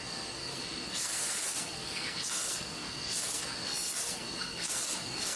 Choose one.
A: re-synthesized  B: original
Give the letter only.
A